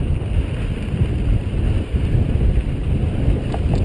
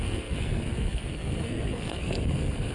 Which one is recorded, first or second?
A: first